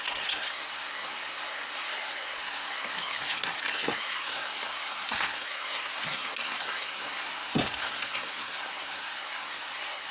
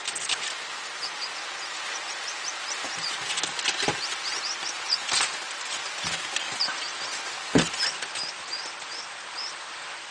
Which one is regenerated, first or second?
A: first